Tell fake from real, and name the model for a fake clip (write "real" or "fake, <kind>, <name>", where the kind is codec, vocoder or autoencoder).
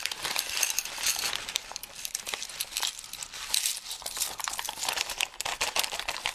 fake, vocoder, BigVGAN v2